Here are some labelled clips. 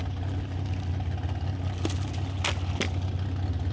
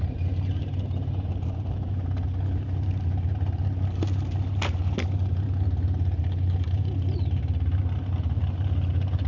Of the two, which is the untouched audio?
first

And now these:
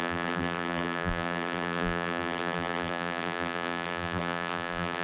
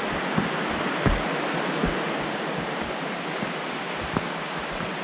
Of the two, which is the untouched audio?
second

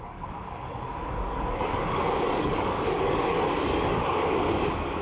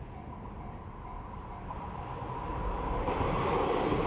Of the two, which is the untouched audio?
second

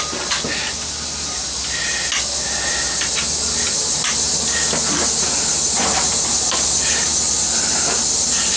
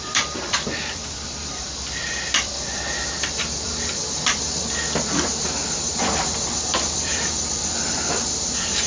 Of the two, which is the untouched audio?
first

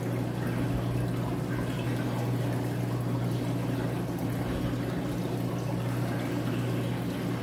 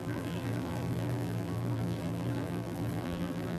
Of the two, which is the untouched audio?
first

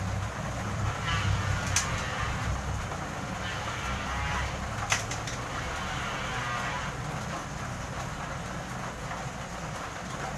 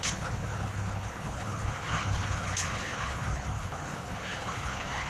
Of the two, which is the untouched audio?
first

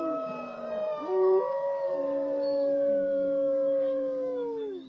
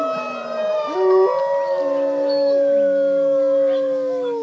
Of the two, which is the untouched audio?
second